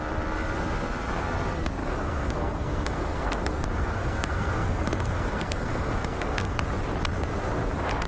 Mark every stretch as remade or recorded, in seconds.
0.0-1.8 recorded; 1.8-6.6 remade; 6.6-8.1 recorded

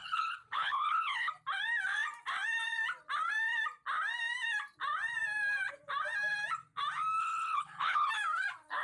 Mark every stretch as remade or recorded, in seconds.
0.0-1.3 remade; 1.3-7.2 recorded; 7.2-8.1 remade; 8.1-8.8 recorded

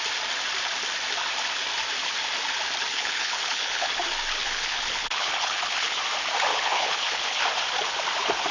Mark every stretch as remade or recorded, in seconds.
0.0-2.9 recorded; 2.9-3.9 remade; 3.9-4.4 recorded; 4.4-6.0 remade; 6.0-6.5 recorded; 6.5-7.4 remade; 7.4-8.5 recorded

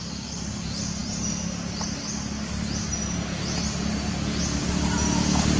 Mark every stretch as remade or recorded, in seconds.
0.0-5.6 recorded

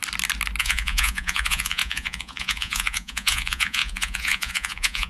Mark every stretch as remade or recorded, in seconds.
0.0-0.6 recorded; 0.6-5.1 remade

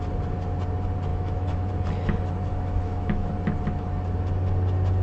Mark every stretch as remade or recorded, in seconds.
0.0-1.1 recorded; 1.1-1.7 remade; 1.7-2.5 recorded; 2.5-3.3 remade; 3.3-5.0 recorded

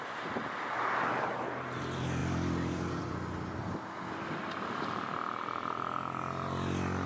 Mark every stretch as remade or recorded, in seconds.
0.0-7.1 recorded